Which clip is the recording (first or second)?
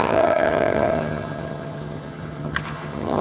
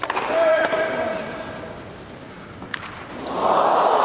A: second